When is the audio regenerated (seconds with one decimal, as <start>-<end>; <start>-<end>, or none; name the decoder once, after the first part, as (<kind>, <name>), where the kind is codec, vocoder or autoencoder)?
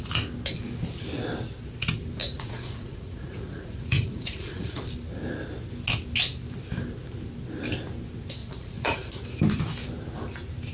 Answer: 2.2-4.8 (vocoder, Vocos); 8.4-9.1